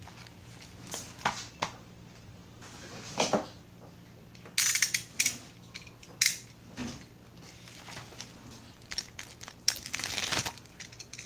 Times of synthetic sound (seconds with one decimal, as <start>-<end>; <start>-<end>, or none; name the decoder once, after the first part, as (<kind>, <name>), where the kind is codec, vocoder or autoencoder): none